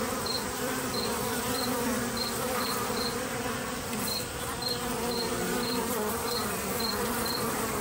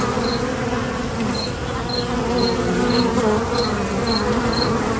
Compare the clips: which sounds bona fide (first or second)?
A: second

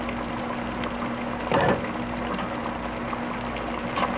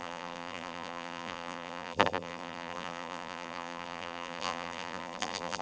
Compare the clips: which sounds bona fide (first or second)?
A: first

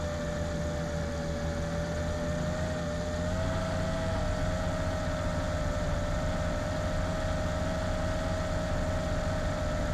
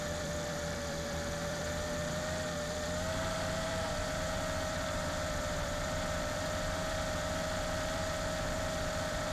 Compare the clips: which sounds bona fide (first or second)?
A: first